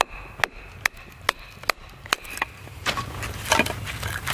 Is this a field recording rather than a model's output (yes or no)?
yes